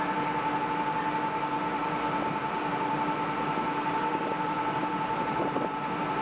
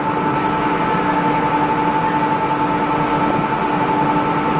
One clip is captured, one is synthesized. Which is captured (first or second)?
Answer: second